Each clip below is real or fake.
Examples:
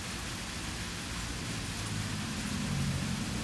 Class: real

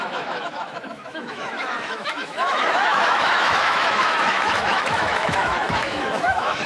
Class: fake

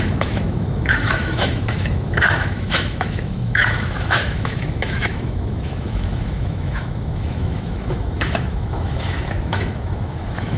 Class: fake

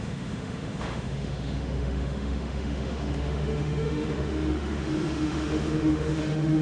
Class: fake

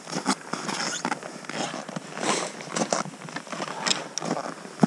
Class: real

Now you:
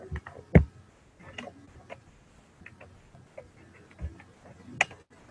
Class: real